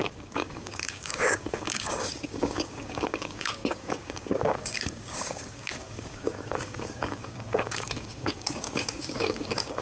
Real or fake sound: fake